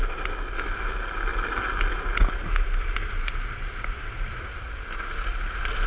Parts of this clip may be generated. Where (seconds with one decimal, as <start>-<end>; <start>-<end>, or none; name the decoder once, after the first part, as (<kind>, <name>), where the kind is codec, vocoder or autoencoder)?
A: none